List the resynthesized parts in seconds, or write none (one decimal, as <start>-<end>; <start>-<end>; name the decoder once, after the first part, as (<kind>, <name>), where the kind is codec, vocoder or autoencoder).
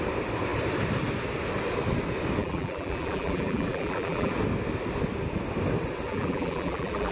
2.4-4.3 (vocoder, BigVGAN v2); 6.1-7.1